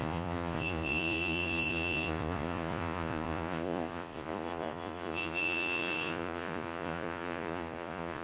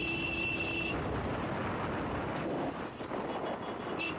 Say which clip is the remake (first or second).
first